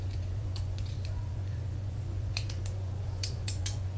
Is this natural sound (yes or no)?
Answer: no